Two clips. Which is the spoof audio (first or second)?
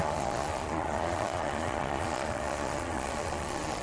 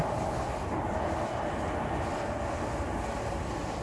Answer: first